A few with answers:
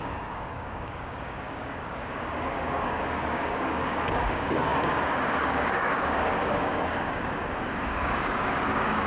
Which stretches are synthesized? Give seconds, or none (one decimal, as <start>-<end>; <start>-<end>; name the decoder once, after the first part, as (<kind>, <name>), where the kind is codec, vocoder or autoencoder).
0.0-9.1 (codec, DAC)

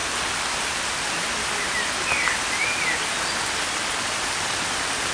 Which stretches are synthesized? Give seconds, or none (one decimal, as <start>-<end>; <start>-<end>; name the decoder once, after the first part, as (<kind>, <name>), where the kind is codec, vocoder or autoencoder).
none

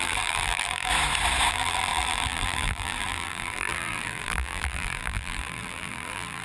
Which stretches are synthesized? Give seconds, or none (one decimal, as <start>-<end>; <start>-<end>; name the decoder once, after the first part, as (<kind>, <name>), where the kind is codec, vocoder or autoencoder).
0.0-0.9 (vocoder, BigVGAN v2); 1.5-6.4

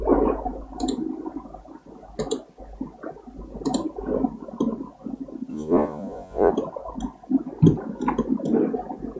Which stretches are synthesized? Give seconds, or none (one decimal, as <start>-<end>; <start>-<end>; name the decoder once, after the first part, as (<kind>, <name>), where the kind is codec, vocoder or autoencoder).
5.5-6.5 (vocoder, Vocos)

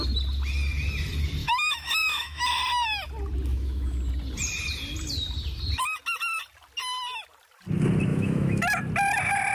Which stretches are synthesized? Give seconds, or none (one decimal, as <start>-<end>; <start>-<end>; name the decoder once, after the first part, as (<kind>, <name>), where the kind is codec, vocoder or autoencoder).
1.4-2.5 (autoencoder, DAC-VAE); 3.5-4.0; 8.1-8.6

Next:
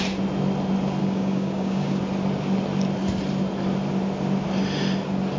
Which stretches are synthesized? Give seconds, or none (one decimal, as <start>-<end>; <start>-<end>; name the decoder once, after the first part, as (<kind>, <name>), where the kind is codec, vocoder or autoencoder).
1.0-2.0 (codec, DAC)